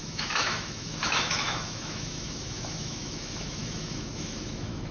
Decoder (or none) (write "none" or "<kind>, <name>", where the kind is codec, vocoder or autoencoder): autoencoder, DAC-VAE